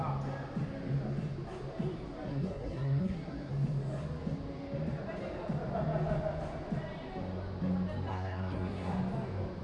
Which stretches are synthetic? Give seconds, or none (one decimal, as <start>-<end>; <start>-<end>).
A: 2.3-3.5; 8.1-9.0